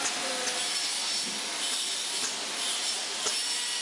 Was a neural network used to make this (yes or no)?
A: no